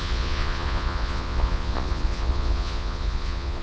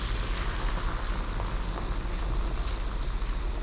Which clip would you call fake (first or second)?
first